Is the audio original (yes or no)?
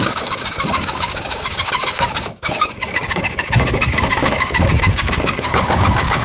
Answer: no